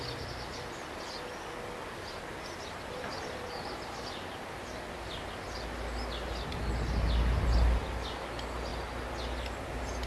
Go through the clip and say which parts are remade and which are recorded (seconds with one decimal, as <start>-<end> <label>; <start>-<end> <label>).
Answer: 0.0-10.1 recorded